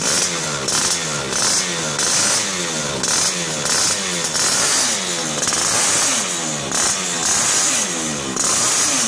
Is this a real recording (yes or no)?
yes